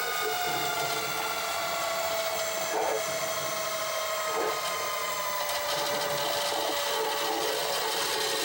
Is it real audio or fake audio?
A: real